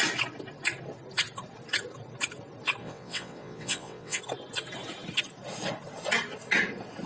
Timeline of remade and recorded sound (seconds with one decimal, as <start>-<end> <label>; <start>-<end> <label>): 0.0-2.8 recorded; 2.8-4.2 remade; 4.2-7.1 recorded

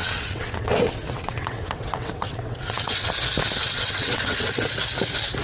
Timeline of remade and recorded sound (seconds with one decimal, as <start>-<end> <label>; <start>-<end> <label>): 0.0-3.1 remade; 3.1-3.6 recorded; 3.6-4.6 remade; 4.6-5.4 recorded

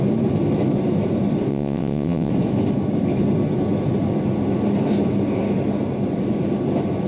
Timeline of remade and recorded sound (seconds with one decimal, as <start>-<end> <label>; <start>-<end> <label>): 0.0-1.5 recorded; 1.5-2.3 remade; 2.3-7.1 recorded

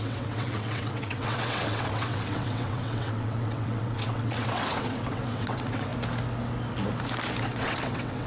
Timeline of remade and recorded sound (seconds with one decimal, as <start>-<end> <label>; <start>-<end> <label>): 0.0-5.9 remade; 5.9-7.4 recorded; 7.4-8.3 remade

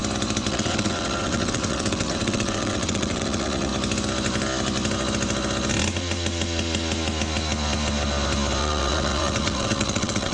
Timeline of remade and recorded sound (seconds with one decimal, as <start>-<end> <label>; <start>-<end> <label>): 0.0-0.5 recorded; 0.5-3.7 remade; 3.7-8.6 recorded; 8.6-10.3 remade